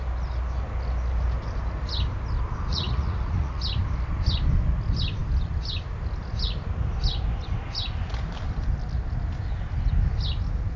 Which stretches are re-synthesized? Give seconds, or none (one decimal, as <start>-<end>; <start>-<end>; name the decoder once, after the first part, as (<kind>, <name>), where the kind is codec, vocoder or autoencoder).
2.7-3.6 (vocoder, Vocos)